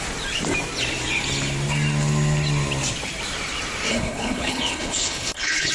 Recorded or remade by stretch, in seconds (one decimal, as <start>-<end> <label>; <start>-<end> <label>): 0.0-3.9 recorded; 3.9-5.7 remade